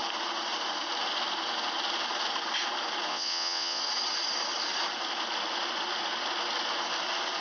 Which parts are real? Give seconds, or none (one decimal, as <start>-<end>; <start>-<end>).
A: 0.0-3.1; 3.8-7.4